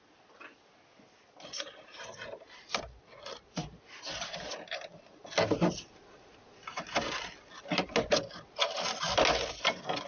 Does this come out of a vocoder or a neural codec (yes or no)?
no